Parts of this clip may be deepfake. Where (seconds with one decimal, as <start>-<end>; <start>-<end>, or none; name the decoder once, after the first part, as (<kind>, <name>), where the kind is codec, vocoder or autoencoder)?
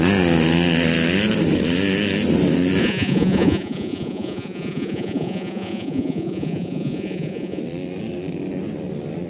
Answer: 2.8-7.6 (vocoder, Vocos)